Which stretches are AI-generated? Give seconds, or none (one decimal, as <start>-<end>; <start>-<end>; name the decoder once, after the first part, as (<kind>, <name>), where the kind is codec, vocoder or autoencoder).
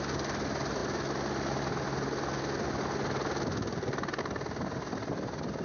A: none